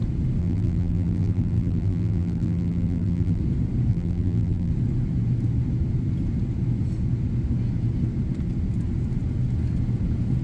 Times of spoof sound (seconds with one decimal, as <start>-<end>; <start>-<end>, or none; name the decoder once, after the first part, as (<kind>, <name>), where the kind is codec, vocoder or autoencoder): 0.4-3.4 (vocoder, BigVGAN v2); 3.9-4.7